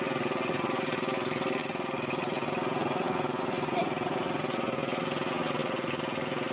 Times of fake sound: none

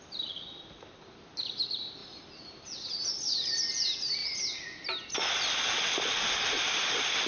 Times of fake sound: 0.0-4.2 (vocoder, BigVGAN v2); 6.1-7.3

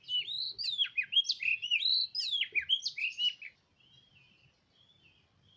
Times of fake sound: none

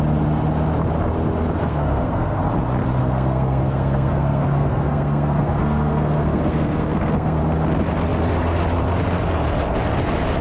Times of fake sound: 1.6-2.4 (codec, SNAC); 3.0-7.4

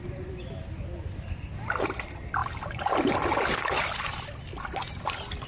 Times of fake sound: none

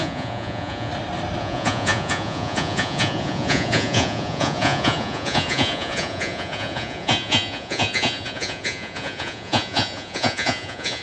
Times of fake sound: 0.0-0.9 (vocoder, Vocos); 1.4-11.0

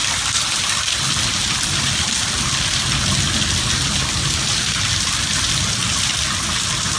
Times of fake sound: none